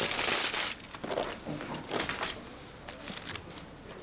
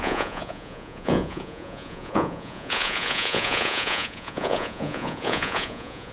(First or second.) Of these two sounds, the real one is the first